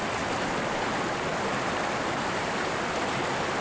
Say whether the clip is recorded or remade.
recorded